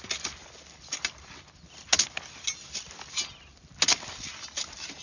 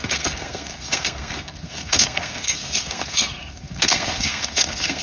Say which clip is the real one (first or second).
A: first